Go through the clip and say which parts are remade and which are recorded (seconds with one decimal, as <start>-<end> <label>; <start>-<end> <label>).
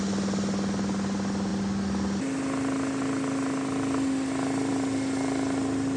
0.0-6.0 recorded